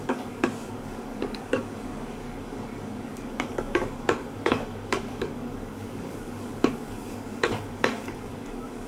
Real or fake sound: fake